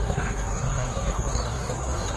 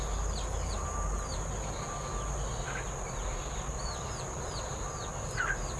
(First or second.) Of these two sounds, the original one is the second